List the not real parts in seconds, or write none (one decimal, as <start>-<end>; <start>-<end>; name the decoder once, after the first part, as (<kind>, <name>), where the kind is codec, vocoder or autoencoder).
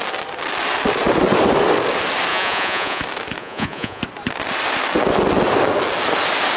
2.3-3.0 (vocoder, Vocos); 3.4-4.0